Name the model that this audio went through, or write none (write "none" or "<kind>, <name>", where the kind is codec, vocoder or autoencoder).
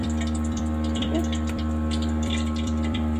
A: vocoder, BigVGAN v2